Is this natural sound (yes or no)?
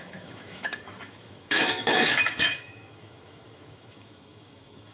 no